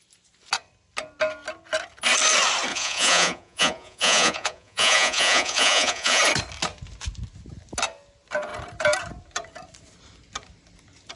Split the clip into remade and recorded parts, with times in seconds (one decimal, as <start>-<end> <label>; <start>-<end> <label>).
0.0-2.7 recorded; 2.7-6.2 remade; 6.2-11.2 recorded